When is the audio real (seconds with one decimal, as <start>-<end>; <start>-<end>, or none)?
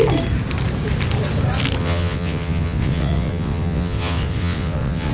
0.0-1.8